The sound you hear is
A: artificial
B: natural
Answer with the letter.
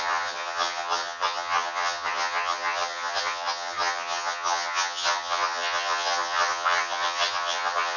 A